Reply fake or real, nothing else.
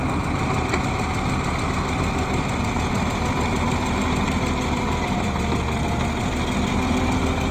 real